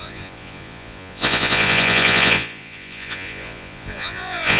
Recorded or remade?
remade